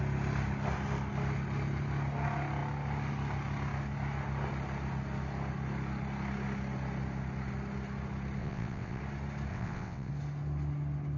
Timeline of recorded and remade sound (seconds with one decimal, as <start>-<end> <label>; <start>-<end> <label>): 0.0-8.4 recorded; 8.4-9.0 remade; 9.0-9.5 recorded; 9.5-10.1 remade; 10.1-11.2 recorded